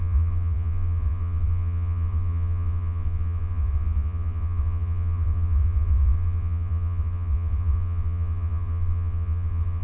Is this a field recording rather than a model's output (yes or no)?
no